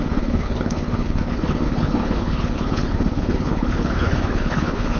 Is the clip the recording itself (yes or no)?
no